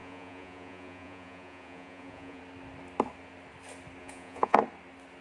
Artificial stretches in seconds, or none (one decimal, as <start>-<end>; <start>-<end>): 0.0-2.4; 4.0-4.6